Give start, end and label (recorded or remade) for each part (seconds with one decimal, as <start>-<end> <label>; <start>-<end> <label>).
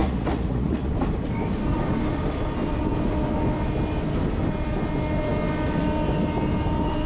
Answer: 0.0-0.9 remade; 0.9-7.1 recorded